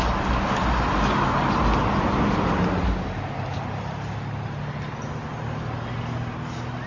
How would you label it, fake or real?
real